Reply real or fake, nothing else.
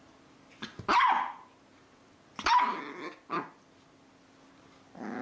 real